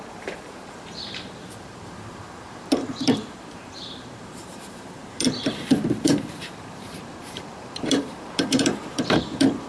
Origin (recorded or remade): remade